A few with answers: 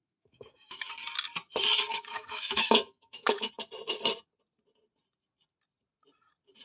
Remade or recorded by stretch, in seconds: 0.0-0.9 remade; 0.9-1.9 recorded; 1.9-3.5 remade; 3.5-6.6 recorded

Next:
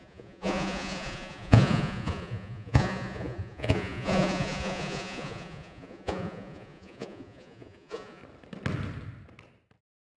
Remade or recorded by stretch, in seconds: 0.0-8.2 remade; 8.2-10.2 recorded

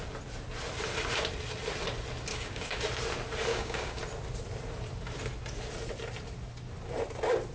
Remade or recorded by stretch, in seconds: 0.0-2.3 recorded; 2.3-2.8 remade; 2.8-3.5 recorded; 3.5-4.0 remade; 4.0-7.5 recorded